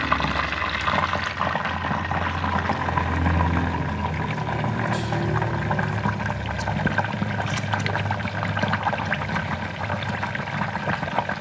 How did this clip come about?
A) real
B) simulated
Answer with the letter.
A